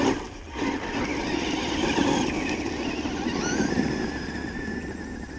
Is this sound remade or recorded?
recorded